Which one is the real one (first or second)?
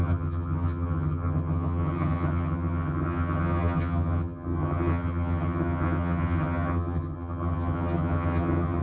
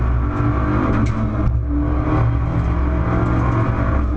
second